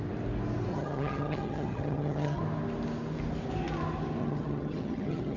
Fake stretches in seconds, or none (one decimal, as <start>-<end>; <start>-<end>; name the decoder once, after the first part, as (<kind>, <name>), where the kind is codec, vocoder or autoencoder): 0.7-2.4 (vocoder, HiFi-GAN); 4.2-5.4